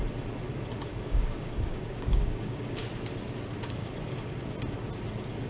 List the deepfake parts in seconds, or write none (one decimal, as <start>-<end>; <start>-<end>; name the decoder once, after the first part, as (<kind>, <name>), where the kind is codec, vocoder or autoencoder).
0.9-2.9 (codec, DAC)